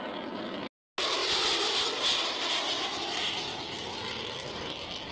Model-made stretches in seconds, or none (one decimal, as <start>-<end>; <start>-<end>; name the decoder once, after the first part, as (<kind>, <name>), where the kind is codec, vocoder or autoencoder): 2.9-3.6 (vocoder, BigVGAN v2)